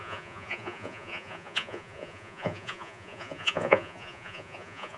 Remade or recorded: remade